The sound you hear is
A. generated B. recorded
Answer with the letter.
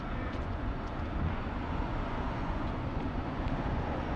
A